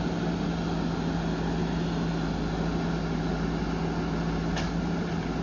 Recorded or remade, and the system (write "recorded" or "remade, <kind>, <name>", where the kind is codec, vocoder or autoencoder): recorded